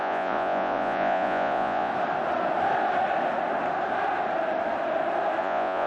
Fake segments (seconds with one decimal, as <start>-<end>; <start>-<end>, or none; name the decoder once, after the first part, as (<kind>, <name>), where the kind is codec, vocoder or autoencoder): 0.0-1.9 (vocoder, Vocos); 5.4-5.9